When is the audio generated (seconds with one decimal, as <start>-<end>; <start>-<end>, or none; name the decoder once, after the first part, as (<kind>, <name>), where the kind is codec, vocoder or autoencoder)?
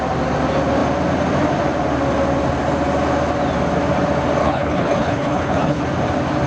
4.4-5.8 (codec, HILCodec)